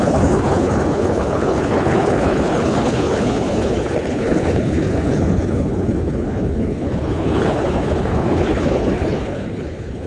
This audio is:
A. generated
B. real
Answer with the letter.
A